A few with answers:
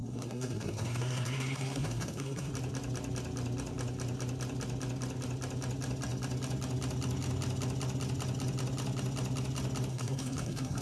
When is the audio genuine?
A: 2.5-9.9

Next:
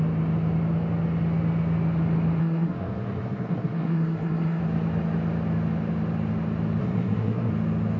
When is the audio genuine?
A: 0.0-2.4; 4.6-6.8; 7.5-8.0

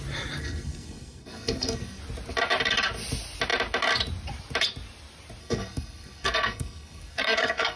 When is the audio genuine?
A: 0.0-0.4; 2.0-5.4

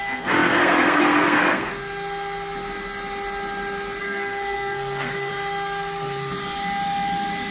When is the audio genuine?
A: 1.7-4.0; 5.3-7.5

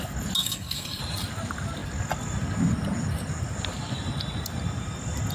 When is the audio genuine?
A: 0.0-0.4; 1.0-5.3

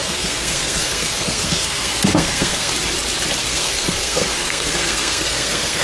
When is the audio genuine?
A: 2.7-3.4

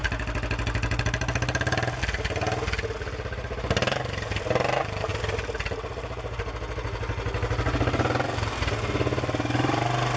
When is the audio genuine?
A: 0.0-10.2

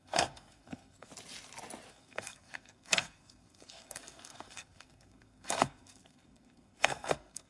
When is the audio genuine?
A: 1.1-1.9